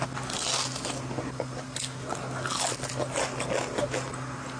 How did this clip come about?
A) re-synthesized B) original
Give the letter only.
B